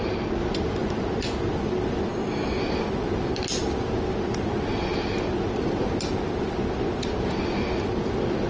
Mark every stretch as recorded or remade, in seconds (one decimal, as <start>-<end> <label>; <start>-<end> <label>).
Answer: 0.0-2.1 recorded; 2.1-2.6 remade; 2.6-8.5 recorded

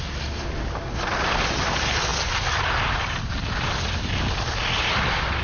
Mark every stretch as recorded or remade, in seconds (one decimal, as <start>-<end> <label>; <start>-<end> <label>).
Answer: 0.0-5.4 recorded

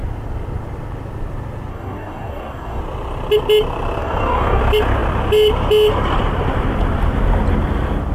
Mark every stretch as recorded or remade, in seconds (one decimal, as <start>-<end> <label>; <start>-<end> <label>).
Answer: 0.0-1.7 recorded; 1.7-2.8 remade; 2.8-4.0 recorded; 4.0-4.6 remade; 4.6-8.1 recorded